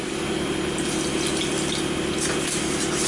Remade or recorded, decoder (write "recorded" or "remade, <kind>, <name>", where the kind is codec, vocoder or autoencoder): recorded